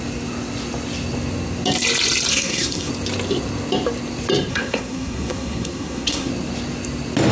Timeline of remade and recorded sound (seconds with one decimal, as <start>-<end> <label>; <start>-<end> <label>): 0.0-2.3 recorded; 2.3-2.9 remade; 2.9-4.5 recorded; 4.5-6.3 remade; 6.3-7.3 recorded